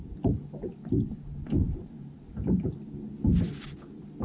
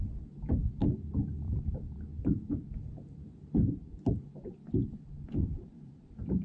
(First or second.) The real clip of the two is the first